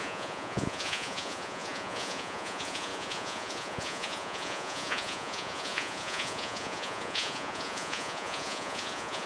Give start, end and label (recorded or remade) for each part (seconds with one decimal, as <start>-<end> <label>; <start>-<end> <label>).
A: 0.0-9.3 remade